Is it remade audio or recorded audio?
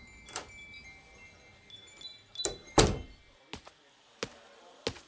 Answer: recorded